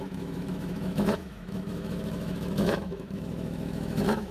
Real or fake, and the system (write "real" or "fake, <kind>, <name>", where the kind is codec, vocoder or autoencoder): fake, autoencoder, DAC-VAE